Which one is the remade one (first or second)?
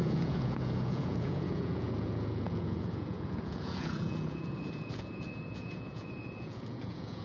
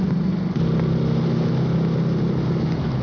first